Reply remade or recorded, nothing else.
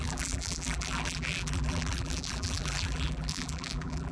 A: remade